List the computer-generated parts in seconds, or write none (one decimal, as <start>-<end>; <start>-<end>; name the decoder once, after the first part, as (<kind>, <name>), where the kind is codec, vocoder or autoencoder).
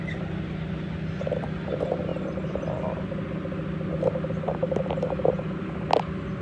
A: none